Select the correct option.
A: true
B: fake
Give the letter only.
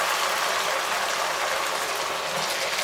A